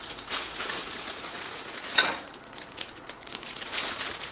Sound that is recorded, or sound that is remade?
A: remade